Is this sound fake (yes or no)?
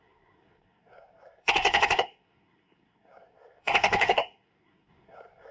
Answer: yes